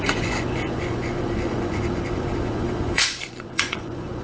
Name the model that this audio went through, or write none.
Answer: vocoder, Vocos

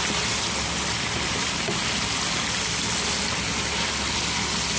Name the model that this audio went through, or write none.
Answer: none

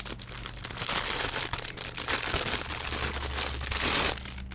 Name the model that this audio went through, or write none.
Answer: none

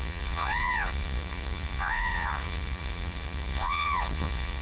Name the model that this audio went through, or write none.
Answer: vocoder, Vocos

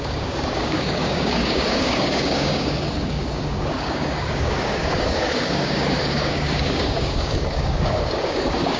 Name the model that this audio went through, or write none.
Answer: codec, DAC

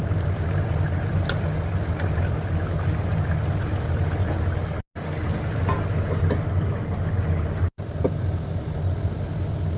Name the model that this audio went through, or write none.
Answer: none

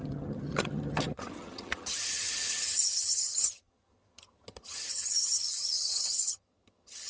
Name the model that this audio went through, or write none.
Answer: vocoder, HiFi-GAN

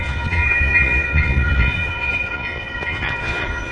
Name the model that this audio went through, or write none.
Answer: vocoder, Vocos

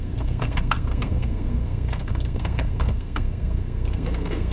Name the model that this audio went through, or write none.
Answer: codec, SNAC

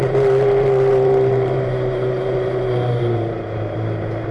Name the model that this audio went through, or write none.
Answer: vocoder, BigVGAN v2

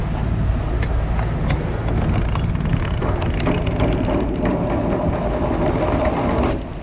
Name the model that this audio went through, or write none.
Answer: none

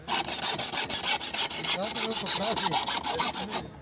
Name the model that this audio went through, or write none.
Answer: none